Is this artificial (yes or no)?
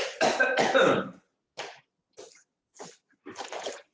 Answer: no